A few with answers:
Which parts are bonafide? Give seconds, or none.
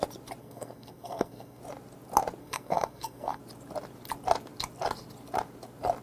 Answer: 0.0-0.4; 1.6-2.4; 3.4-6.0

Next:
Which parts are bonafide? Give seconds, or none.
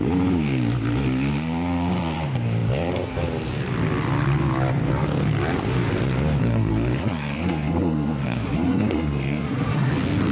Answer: 0.0-6.4; 9.9-10.3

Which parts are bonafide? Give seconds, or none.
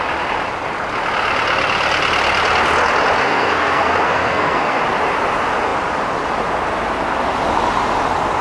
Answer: 0.0-3.2; 4.8-8.4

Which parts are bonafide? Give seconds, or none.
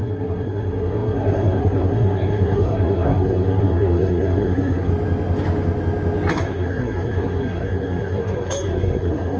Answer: 4.9-6.3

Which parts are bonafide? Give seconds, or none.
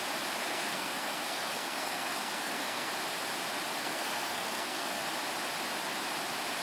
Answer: 0.0-0.4; 2.9-3.8; 5.0-6.6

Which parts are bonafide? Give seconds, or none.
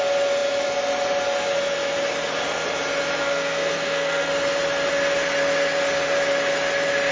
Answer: 0.0-3.2; 4.3-7.1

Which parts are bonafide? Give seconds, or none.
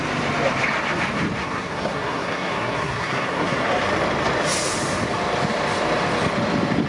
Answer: 0.0-1.4; 3.8-6.9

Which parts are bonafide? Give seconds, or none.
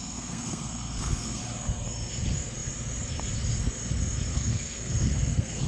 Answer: 1.4-4.3